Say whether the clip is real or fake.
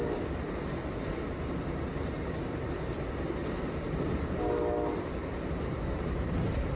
real